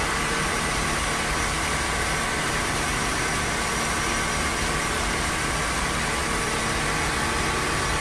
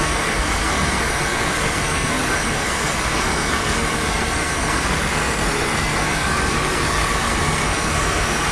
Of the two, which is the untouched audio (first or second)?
first